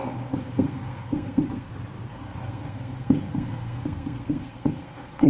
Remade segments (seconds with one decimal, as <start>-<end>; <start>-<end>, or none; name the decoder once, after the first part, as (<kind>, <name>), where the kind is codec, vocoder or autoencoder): 0.0-1.7 (codec, SNAC); 2.1-5.3